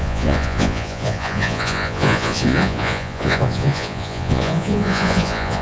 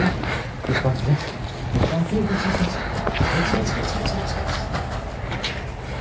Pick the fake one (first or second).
first